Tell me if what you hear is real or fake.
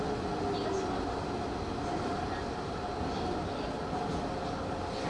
real